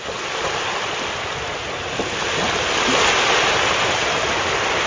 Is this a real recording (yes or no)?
yes